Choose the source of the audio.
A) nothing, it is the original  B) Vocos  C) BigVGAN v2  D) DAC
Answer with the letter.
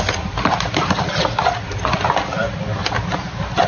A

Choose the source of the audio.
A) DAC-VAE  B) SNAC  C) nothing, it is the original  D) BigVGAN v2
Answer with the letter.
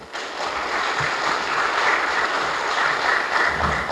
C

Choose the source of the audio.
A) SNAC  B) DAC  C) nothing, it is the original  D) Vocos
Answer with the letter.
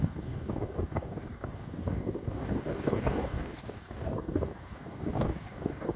B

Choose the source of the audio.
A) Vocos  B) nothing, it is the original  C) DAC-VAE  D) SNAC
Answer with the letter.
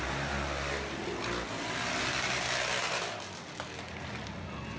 B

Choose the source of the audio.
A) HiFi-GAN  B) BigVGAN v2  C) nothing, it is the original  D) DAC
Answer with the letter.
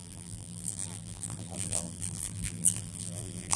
B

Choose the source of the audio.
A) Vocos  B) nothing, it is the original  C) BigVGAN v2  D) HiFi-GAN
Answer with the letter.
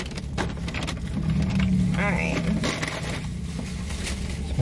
B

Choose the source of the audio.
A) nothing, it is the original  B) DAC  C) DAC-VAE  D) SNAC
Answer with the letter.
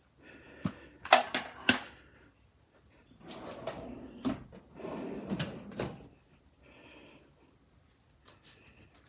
A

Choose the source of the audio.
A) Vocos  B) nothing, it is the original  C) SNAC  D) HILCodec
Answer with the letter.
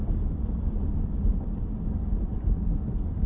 B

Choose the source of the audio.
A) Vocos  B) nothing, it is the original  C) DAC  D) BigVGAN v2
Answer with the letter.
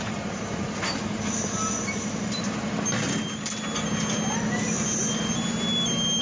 B